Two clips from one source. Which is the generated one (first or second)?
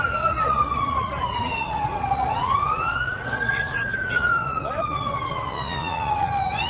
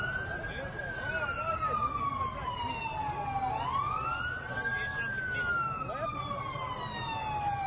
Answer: first